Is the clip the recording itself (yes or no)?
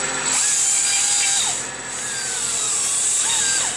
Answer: yes